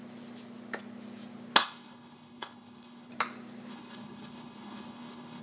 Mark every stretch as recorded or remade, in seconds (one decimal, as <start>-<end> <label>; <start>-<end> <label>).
0.0-1.6 recorded; 1.6-3.1 remade; 3.1-3.7 recorded; 3.7-5.4 remade